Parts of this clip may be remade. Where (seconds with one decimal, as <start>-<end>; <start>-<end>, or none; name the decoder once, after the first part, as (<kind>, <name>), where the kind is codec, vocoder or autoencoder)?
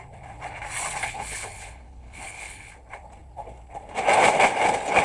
1.0-2.7 (codec, HILCodec)